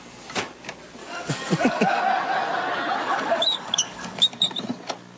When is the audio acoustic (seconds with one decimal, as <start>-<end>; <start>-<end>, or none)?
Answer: 0.0-1.0; 2.0-3.0; 4.3-5.2